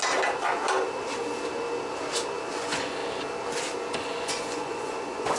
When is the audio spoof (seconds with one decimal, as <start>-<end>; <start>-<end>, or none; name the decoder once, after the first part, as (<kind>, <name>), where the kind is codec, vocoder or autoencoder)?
2.5-3.0 (vocoder, Vocos); 3.9-5.4